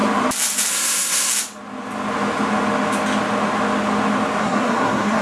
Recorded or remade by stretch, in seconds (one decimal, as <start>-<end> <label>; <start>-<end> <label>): 0.0-0.7 recorded; 0.7-1.3 remade; 1.3-4.4 recorded; 4.4-5.2 remade